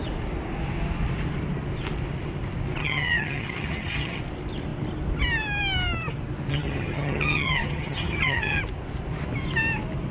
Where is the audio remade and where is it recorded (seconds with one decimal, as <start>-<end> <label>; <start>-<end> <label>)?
0.0-2.8 recorded; 2.8-4.2 remade; 4.2-6.5 recorded; 6.5-8.6 remade; 8.6-10.1 recorded